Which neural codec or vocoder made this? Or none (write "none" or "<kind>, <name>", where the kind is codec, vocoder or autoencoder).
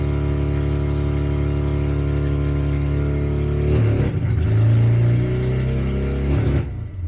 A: none